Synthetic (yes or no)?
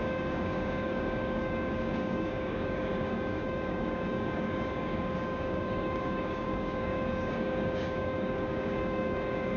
yes